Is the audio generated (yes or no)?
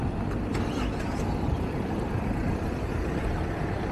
no